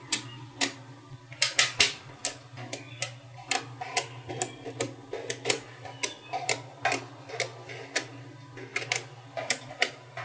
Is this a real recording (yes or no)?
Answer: yes